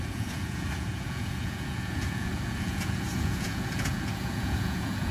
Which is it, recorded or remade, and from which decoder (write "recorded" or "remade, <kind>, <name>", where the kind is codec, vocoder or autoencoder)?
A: remade, vocoder, Vocos